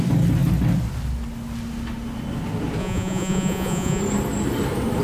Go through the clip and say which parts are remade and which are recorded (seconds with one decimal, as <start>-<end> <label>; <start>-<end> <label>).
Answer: 0.0-2.8 recorded; 2.8-4.0 remade; 4.0-5.0 recorded